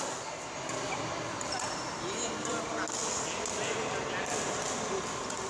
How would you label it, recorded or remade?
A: recorded